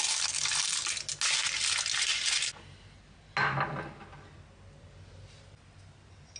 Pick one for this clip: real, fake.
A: real